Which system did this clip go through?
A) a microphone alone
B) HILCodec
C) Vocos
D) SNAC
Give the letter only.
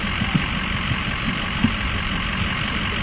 A